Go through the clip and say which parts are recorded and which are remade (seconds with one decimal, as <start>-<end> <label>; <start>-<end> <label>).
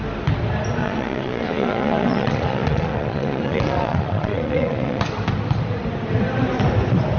0.0-0.8 recorded; 0.8-5.0 remade; 5.0-7.2 recorded